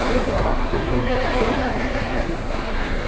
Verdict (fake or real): fake